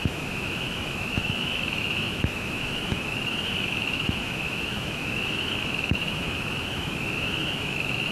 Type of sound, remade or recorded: remade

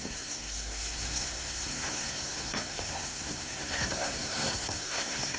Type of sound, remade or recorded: remade